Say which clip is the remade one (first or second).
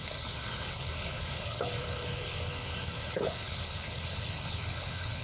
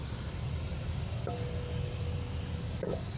first